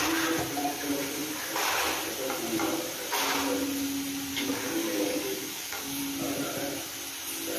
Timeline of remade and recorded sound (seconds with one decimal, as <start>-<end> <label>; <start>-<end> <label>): 0.0-4.3 recorded; 4.3-6.0 remade; 6.0-7.6 recorded